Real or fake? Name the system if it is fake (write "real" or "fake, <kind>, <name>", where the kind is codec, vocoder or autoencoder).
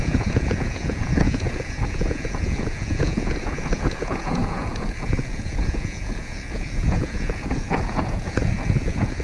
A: fake, vocoder, Vocos